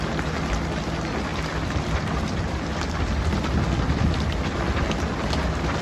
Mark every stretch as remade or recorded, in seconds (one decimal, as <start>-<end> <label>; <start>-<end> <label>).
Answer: 0.0-1.3 recorded; 1.3-4.6 remade; 4.6-5.8 recorded